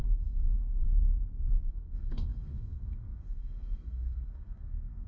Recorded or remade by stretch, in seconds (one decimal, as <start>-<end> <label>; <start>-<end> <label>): 0.0-1.1 remade; 1.1-1.7 recorded; 1.7-5.1 remade